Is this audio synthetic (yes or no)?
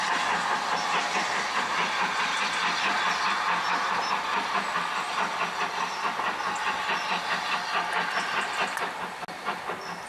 no